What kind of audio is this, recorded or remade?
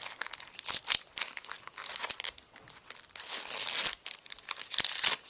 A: recorded